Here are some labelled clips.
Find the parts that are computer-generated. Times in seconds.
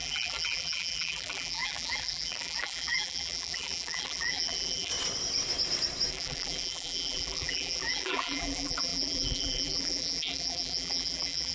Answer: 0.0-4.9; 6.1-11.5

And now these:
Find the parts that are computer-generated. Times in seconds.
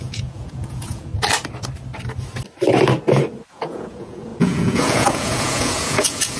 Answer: 0.0-1.1; 3.5-6.4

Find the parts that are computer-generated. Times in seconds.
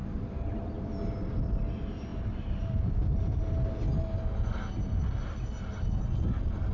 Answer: 2.1-3.3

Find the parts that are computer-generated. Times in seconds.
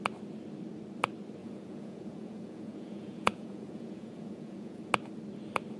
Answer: 1.4-4.9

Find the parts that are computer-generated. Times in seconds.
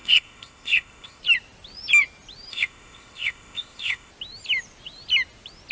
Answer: 0.0-1.2; 2.5-4.1